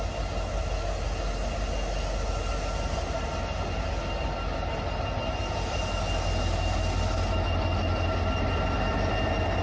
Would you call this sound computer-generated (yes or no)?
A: no